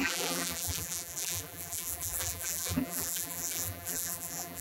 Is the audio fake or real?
fake